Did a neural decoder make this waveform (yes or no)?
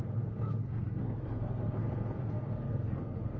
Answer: yes